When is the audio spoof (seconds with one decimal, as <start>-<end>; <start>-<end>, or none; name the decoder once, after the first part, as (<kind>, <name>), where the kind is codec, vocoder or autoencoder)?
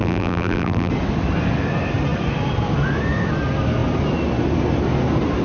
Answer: 0.0-0.9 (vocoder, BigVGAN v2)